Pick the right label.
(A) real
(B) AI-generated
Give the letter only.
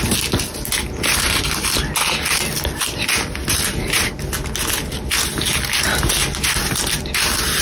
A